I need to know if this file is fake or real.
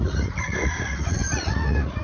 fake